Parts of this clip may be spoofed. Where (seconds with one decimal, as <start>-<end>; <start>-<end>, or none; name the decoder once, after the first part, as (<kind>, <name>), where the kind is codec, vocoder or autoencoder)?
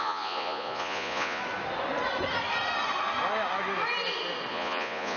0.0-1.4 (vocoder, Vocos); 4.5-5.2